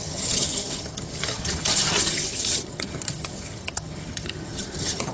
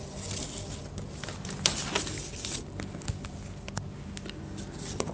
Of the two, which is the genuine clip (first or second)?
second